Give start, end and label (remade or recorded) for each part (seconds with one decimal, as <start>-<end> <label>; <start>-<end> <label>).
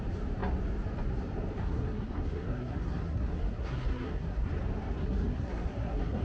0.0-1.6 recorded; 1.6-4.5 remade; 4.5-5.0 recorded; 5.0-6.2 remade